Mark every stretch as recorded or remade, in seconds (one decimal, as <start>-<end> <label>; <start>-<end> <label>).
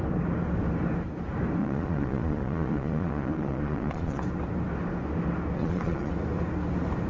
0.0-1.6 recorded; 1.6-4.2 remade; 4.2-5.6 recorded; 5.6-6.1 remade; 6.1-7.1 recorded